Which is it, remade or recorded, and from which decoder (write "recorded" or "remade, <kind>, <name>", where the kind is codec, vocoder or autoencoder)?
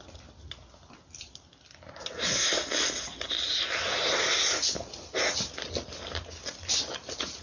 recorded